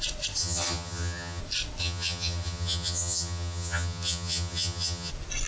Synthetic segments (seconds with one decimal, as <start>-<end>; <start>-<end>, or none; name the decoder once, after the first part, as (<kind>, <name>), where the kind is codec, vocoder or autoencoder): 0.4-1.4 (vocoder, HiFi-GAN); 1.8-5.1